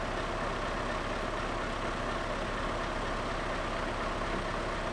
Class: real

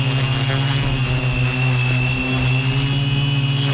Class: real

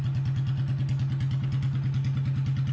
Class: real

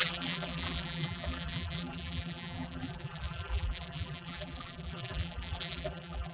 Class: fake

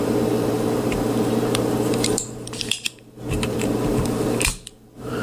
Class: fake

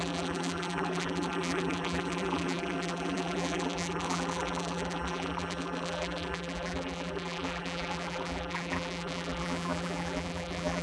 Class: fake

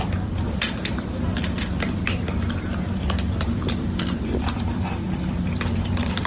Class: fake